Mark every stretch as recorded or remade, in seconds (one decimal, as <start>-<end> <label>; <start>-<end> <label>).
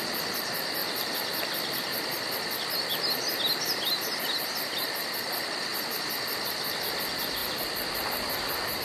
0.0-8.8 recorded